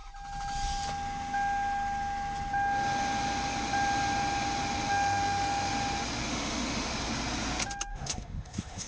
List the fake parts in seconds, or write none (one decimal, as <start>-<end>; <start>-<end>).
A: 4.9-5.7; 6.3-6.9; 7.9-8.9